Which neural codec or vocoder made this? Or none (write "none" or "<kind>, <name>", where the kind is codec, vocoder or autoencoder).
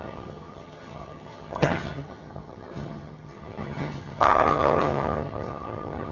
vocoder, HiFi-GAN